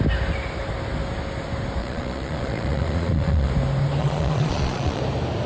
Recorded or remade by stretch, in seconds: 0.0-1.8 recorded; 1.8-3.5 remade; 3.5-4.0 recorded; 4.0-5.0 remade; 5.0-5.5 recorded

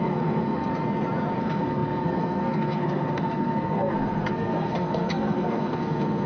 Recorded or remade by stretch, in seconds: 0.0-0.7 remade; 0.7-1.4 recorded; 1.4-6.3 remade

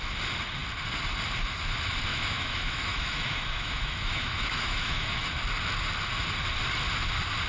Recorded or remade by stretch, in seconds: 0.0-2.1 recorded; 2.1-5.3 remade; 5.3-7.5 recorded

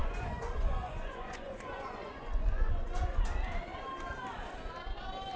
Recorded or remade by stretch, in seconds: 0.0-3.2 remade; 3.2-5.4 recorded

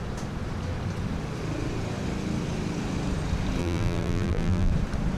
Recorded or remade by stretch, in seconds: 0.0-3.6 recorded; 3.6-4.7 remade; 4.7-5.2 recorded

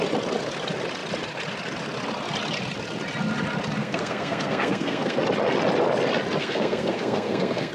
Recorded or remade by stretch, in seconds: 0.0-3.8 recorded; 3.8-5.2 remade; 5.2-6.4 recorded; 6.4-7.7 remade